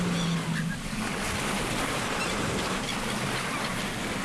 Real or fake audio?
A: real